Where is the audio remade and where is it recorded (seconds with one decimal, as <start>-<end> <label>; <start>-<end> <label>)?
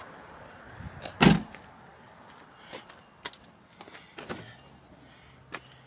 0.0-5.9 recorded